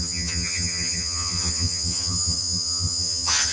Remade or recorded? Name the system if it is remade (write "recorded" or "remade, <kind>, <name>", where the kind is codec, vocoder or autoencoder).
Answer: remade, vocoder, HiFi-GAN